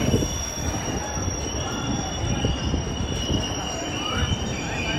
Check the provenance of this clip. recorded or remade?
remade